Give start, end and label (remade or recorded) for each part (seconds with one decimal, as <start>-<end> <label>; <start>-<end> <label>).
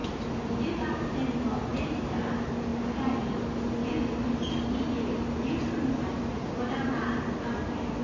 0.0-0.6 remade; 0.6-1.7 recorded; 1.7-2.2 remade; 2.2-8.0 recorded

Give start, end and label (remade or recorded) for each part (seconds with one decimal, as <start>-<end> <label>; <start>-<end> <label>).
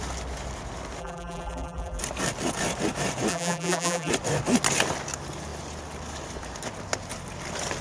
0.0-1.0 recorded; 1.0-2.0 remade; 2.0-3.3 recorded; 3.3-4.1 remade; 4.1-7.8 recorded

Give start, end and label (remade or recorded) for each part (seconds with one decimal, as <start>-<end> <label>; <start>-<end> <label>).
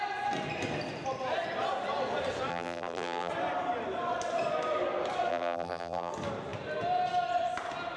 0.0-2.5 recorded; 2.5-3.3 remade; 3.3-5.3 recorded; 5.3-6.1 remade; 6.1-8.0 recorded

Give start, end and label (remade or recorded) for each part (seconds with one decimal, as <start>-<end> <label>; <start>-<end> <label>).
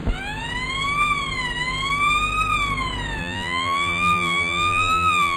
0.0-3.2 recorded; 3.2-5.4 remade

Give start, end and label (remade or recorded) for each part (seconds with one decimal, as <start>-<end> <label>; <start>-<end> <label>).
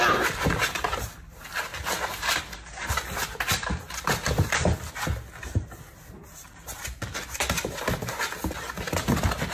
0.0-9.5 recorded